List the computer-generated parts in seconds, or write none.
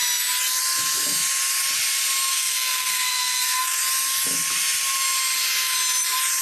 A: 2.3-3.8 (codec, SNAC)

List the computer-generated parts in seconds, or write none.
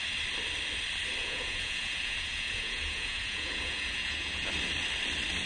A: 1.2-4.5 (vocoder, Vocos)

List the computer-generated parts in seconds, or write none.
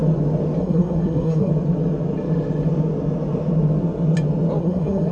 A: 0.6-1.5 (codec, SNAC); 4.6-5.1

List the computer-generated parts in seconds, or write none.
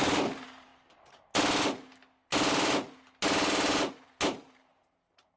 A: 0.0-0.7 (vocoder, BigVGAN v2); 3.9-5.4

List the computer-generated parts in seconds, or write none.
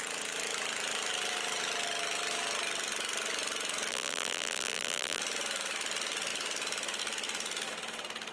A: 3.9-5.2 (vocoder, BigVGAN v2)